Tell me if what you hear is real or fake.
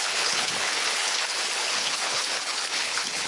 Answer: fake